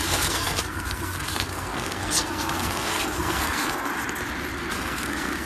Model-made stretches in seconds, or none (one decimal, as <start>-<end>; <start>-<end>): 0.0-3.9; 4.7-5.5